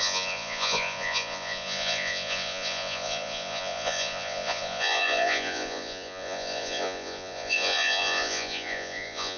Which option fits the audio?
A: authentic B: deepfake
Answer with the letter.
B